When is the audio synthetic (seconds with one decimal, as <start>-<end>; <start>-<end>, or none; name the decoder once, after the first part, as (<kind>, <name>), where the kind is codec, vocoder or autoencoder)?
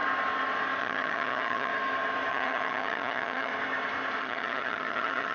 0.8-1.7 (vocoder, HiFi-GAN); 2.3-3.5; 4.2-5.3